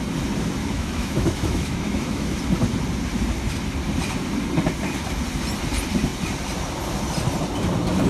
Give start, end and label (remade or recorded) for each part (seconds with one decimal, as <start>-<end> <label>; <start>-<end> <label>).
0.0-0.6 recorded; 0.6-2.4 remade; 2.4-8.1 recorded